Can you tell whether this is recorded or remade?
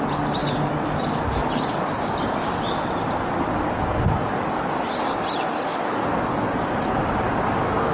recorded